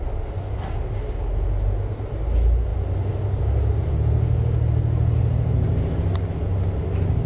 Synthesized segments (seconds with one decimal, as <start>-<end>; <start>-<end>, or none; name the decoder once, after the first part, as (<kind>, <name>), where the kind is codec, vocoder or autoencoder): none